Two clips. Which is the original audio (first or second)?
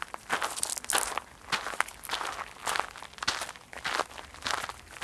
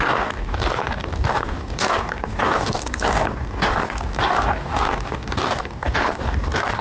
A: first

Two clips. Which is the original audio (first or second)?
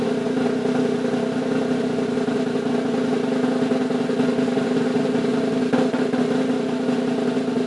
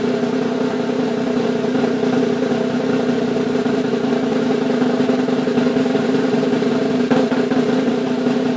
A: first